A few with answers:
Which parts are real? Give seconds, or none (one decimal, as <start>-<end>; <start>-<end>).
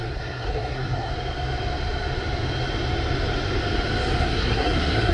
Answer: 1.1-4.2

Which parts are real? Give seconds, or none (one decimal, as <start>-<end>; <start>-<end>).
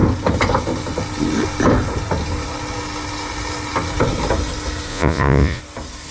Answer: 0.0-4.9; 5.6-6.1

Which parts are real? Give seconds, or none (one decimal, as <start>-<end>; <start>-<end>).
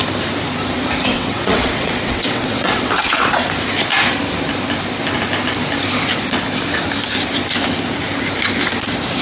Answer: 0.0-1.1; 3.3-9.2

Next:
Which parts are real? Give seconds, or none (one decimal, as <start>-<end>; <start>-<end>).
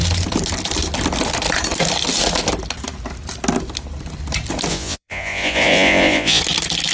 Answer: 0.0-4.7; 6.4-6.9